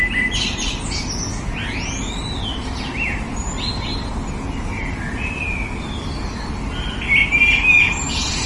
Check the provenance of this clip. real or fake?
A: real